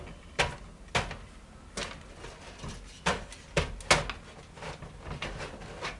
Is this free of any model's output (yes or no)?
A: yes